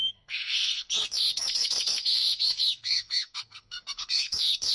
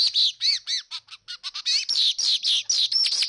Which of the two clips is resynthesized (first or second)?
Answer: first